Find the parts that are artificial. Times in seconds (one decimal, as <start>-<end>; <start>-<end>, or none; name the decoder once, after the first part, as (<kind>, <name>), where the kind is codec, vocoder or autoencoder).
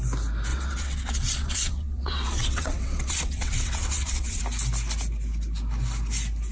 0.5-4.4 (vocoder, WaveNeXt)